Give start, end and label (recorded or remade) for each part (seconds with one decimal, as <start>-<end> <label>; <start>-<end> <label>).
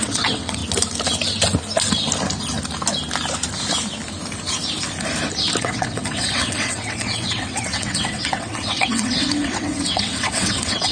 0.0-0.6 remade; 0.6-5.6 recorded; 5.6-10.9 remade